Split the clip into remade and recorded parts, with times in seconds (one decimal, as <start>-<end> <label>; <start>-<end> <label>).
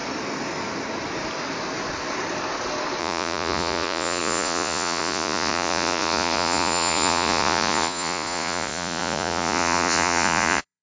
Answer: 0.0-3.0 recorded; 3.0-10.8 remade